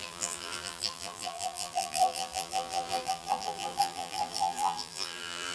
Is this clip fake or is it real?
fake